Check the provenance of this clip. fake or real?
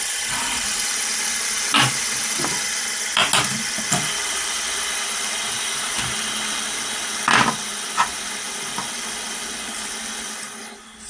real